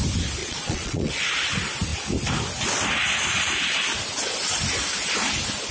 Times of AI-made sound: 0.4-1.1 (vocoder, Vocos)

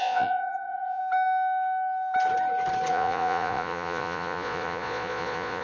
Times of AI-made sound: 0.0-1.0 (vocoder, Vocos); 2.9-5.6

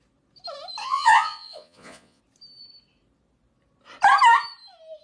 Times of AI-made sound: 0.8-2.2 (vocoder, Vocos)

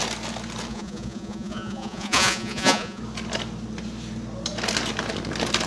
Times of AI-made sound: 0.7-3.0 (vocoder, Vocos)

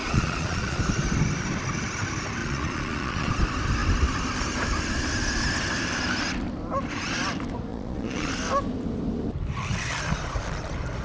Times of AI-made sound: 0.0-0.8 (vocoder, Vocos); 2.4-3.3; 7.7-8.3

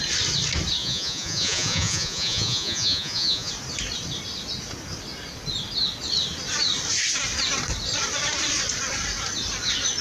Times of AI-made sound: 0.8-3.5 (vocoder, Vocos)

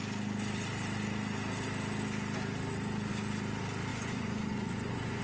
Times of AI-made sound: 3.9-5.2 (vocoder, Vocos)